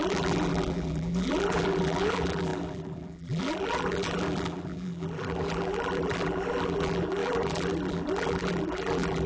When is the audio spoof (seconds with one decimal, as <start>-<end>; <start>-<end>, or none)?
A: 0.0-9.3